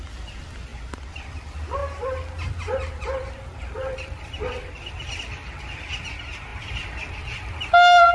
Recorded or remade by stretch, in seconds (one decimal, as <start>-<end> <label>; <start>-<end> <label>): 0.0-8.1 recorded